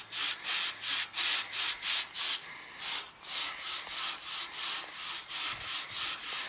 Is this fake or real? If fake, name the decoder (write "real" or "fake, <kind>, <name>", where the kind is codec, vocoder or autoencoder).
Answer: real